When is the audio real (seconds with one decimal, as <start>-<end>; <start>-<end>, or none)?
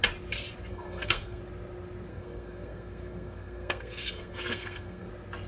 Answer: 0.0-0.7; 1.4-2.1; 5.1-5.5